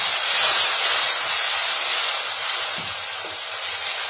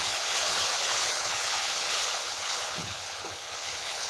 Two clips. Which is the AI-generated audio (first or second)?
second